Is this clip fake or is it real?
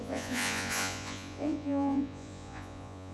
fake